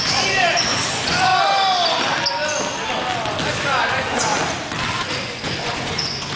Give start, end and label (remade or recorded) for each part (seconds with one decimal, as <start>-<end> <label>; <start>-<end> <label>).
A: 0.0-1.3 remade; 1.3-3.5 recorded; 3.5-4.3 remade; 4.3-5.0 recorded; 5.0-6.4 remade